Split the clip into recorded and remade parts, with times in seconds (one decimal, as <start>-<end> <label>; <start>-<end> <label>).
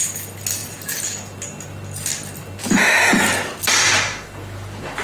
0.0-5.0 recorded